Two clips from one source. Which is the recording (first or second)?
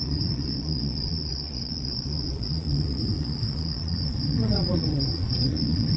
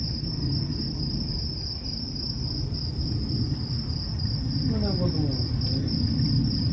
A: second